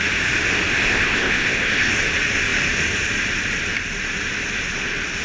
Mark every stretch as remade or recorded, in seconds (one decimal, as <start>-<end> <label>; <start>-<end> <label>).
0.0-0.8 recorded; 0.8-1.9 remade; 1.9-5.2 recorded